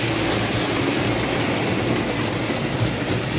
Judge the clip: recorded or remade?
recorded